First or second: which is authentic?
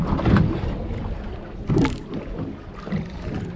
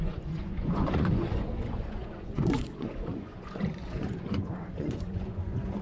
first